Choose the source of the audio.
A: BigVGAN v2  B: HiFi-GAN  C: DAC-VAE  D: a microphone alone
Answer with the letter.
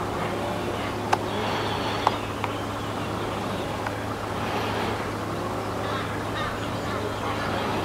D